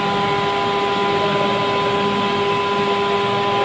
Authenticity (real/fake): real